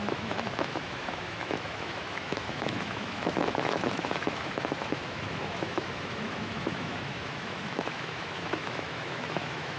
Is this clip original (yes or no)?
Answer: no